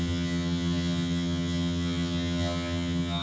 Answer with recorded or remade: remade